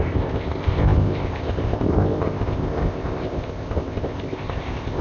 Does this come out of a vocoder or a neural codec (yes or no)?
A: yes